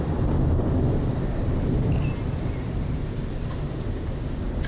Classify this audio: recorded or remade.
recorded